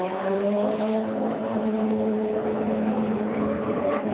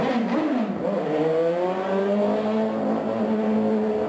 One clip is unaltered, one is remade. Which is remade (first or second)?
first